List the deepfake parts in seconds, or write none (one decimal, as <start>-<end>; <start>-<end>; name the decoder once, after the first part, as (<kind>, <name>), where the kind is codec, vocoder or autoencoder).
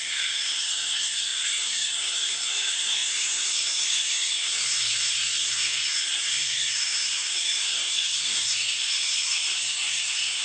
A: 0.0-10.4 (codec, SNAC)